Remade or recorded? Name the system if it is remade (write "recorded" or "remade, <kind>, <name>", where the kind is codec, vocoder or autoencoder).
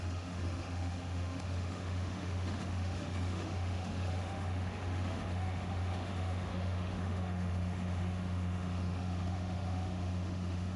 remade, autoencoder, DAC-VAE